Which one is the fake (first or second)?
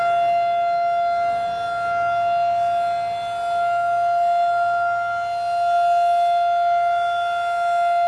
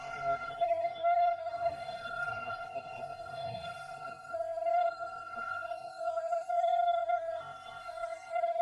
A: second